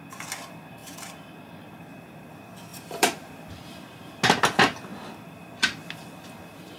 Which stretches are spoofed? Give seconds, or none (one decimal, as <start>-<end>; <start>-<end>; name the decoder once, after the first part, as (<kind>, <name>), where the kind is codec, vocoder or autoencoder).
2.7-4.1 (vocoder, BigVGAN v2)